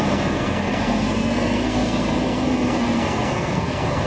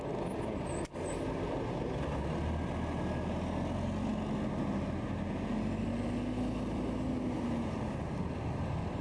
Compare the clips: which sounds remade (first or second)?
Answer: first